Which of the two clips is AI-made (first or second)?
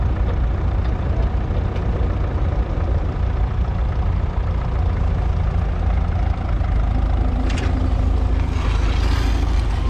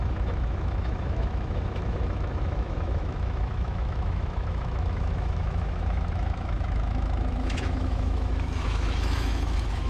second